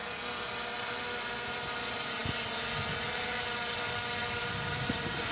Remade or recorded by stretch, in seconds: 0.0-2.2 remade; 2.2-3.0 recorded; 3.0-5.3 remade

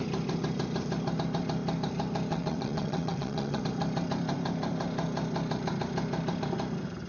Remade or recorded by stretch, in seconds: 0.0-2.3 recorded; 2.3-3.6 remade; 3.6-7.1 recorded

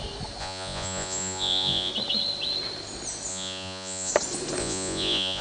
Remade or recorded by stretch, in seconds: 0.0-0.4 recorded; 0.4-1.9 remade; 1.9-3.3 recorded; 3.3-4.1 remade; 4.1-4.6 recorded; 4.6-5.4 remade

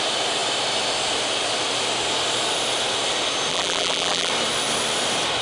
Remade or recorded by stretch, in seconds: 0.0-3.5 recorded; 3.5-4.3 remade; 4.3-5.4 recorded

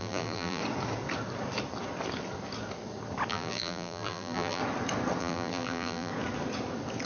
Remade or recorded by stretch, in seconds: 0.0-0.6 remade; 0.6-3.3 recorded; 3.3-4.6 remade; 4.6-5.2 recorded; 5.2-6.1 remade; 6.1-7.1 recorded

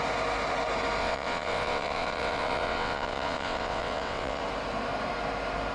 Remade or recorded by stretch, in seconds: 0.0-1.0 recorded; 1.0-4.4 remade; 4.4-5.7 recorded

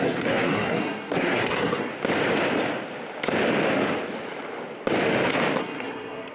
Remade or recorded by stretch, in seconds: 0.0-1.9 remade; 1.9-5.6 recorded; 5.6-6.3 remade

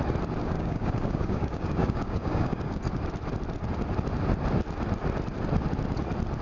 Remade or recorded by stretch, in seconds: 0.0-0.4 recorded; 0.4-2.8 remade; 2.8-6.4 recorded